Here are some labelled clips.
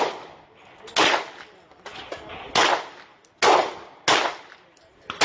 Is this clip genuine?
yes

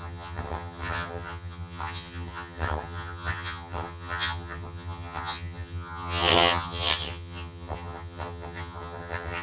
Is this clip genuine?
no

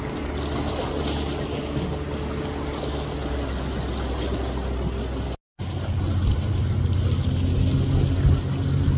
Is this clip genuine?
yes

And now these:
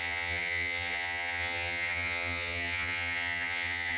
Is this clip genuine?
no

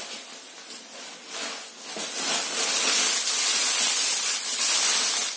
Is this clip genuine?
yes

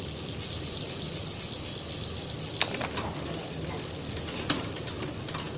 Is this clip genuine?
yes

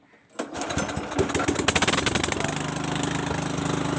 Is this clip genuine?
yes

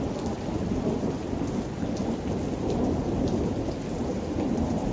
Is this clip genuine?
yes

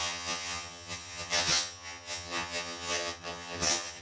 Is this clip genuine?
no